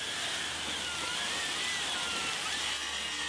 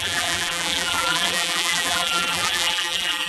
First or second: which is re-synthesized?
second